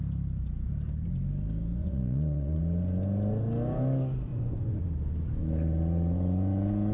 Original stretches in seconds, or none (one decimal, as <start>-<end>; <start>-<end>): 0.0-1.8; 2.6-4.3; 4.8-6.9